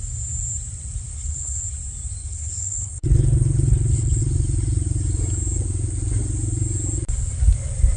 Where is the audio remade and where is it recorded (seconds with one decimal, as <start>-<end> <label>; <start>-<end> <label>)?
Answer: 0.0-1.1 recorded; 1.1-1.6 remade; 1.6-2.2 recorded; 2.2-4.2 remade; 4.2-8.0 recorded